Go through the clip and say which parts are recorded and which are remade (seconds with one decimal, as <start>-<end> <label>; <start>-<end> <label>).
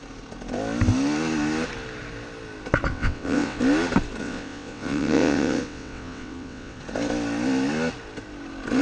0.0-2.9 recorded; 2.9-3.6 remade; 3.6-4.2 recorded; 4.2-6.8 remade; 6.8-8.8 recorded